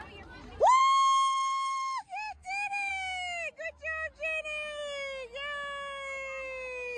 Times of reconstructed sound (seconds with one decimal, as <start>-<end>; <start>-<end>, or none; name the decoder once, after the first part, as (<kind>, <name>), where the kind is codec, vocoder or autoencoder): 0.8-2.9 (autoencoder, DAC-VAE)